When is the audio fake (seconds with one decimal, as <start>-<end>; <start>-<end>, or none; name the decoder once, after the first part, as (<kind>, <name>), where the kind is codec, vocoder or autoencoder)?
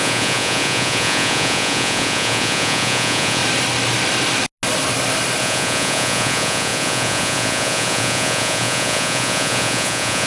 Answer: 0.0-3.4 (vocoder, Vocos); 5.4-10.3